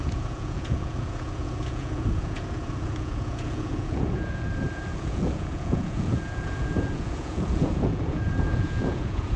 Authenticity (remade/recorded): remade